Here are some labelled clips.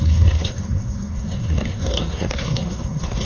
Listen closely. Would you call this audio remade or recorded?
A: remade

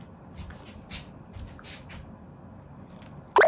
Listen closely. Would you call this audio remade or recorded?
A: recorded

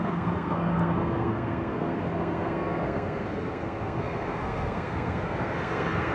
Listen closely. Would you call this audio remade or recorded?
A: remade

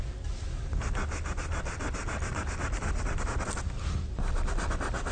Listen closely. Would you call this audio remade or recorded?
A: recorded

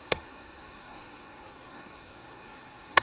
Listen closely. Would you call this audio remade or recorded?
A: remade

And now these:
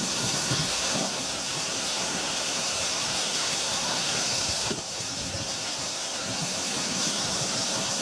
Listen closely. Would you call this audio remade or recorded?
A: remade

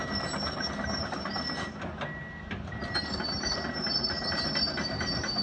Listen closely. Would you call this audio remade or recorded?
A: recorded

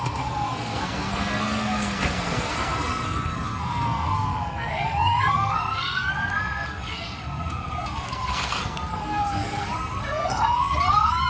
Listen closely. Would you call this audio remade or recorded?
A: remade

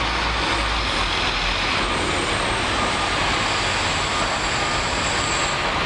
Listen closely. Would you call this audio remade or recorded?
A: recorded